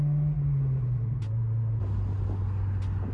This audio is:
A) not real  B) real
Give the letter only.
B